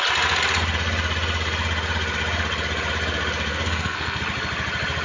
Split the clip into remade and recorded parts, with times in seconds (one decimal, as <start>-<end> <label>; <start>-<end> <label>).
0.0-3.5 recorded; 3.5-4.2 remade; 4.2-5.0 recorded